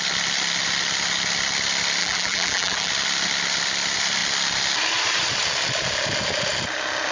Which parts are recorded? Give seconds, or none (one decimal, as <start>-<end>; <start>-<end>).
0.0-2.0; 2.9-7.1